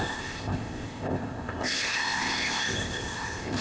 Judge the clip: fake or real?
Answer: fake